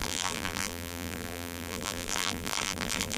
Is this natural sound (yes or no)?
no